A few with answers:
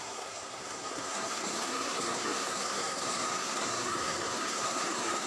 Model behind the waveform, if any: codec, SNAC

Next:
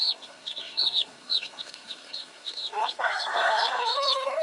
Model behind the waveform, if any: codec, SNAC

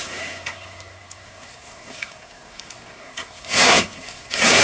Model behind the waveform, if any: codec, SNAC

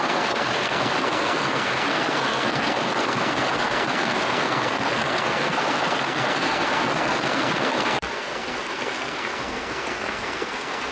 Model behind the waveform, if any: codec, SNAC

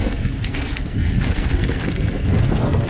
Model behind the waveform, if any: codec, SNAC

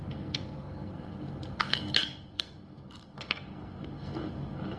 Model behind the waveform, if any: codec, SNAC